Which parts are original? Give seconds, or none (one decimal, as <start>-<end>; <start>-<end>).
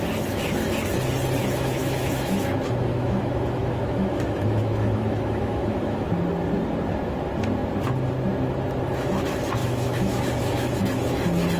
0.0-1.4; 6.1-9.6; 10.8-11.6